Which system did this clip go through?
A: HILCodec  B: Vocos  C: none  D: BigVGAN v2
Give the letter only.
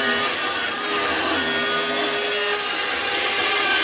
C